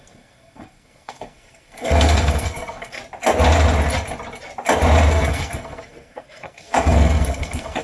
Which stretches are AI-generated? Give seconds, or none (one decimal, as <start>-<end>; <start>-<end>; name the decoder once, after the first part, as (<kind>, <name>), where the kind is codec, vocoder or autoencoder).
0.0-3.0 (codec, SNAC); 5.1-7.8